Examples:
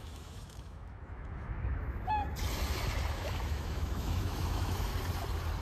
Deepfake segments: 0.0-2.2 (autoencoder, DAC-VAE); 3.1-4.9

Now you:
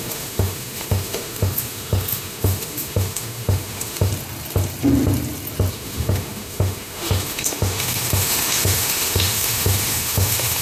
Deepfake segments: 0.0-4.1 (autoencoder, DAC-VAE); 5.7-10.6

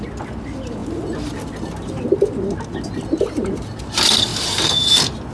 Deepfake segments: none

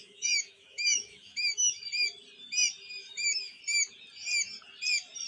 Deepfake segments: 0.0-1.8 (autoencoder, DAC-VAE); 3.0-3.6

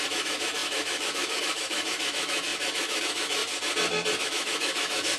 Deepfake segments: 0.0-3.4 (autoencoder, DAC-VAE); 4.2-5.2